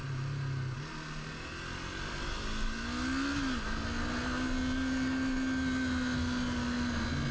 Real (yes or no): yes